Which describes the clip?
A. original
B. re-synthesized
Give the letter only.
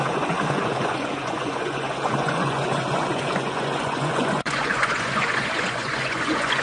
B